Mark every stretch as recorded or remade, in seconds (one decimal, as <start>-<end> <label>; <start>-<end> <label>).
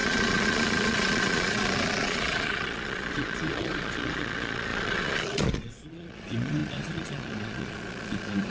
0.0-8.5 remade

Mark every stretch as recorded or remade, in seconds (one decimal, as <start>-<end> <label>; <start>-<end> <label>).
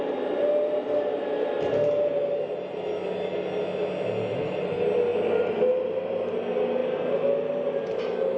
0.0-8.4 recorded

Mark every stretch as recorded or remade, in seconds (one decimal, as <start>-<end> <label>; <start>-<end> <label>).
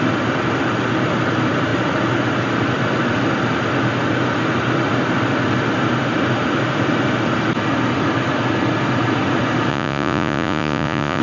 0.0-9.7 recorded; 9.7-11.2 remade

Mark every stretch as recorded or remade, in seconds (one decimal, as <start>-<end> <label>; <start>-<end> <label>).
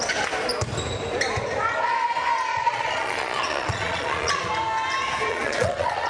0.0-2.5 recorded; 2.5-4.5 remade; 4.5-5.3 recorded; 5.3-6.1 remade